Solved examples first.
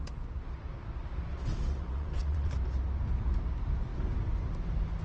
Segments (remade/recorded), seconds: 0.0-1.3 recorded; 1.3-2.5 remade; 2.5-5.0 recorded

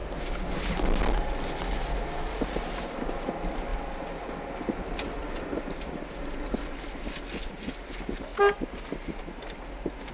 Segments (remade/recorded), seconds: 0.0-10.1 recorded

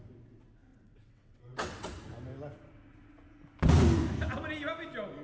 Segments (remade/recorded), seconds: 0.0-0.7 recorded; 0.7-2.0 remade; 2.0-5.2 recorded